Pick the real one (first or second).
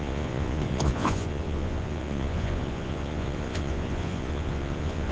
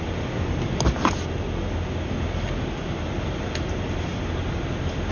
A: second